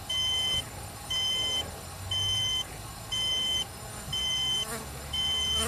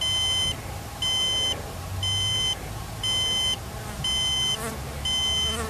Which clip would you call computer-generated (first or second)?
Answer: first